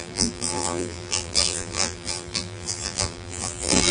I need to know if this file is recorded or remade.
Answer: remade